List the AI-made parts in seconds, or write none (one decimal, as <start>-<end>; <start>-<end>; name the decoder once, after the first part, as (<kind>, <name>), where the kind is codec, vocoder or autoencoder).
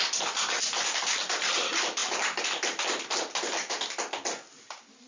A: none